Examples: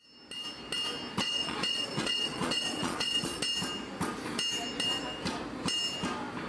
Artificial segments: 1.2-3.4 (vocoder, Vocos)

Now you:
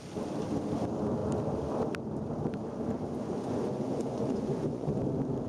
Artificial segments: 3.2-5.0 (vocoder, Vocos)

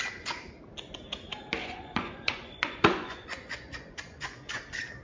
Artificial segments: 1.6-4.6 (vocoder, Vocos)

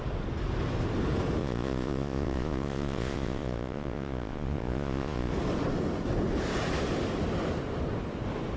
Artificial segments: 1.4-5.3 (vocoder, Vocos)

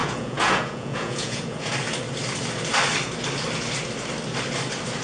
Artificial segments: 0.0-1.7 (vocoder, Vocos)